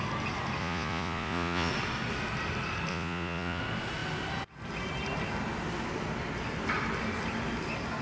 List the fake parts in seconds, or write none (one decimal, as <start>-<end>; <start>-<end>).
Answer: 0.6-1.7; 2.9-3.6